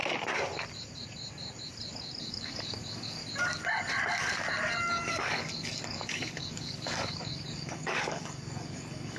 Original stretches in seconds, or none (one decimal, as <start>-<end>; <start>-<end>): 0.0-2.2; 3.2-4.9

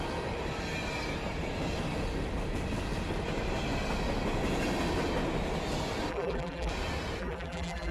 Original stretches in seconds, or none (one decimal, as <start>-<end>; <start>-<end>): 0.0-6.1; 6.7-7.2

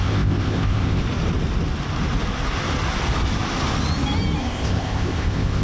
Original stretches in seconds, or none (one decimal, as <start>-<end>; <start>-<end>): 1.0-4.4

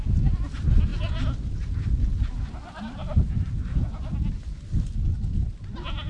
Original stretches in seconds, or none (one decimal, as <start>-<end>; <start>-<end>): 0.0-6.1

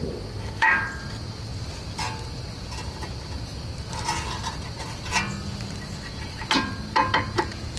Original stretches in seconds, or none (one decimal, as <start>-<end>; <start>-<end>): 0.0-7.8